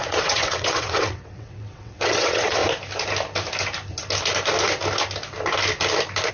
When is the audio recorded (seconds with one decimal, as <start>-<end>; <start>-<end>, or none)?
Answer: 2.6-6.3